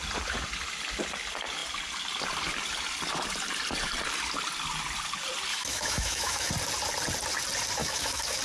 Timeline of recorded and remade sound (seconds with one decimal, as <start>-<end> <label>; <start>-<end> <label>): 0.0-5.5 recorded; 5.5-6.5 remade; 6.5-7.8 recorded; 7.8-8.4 remade